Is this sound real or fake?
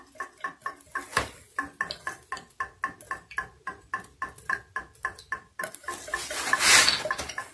real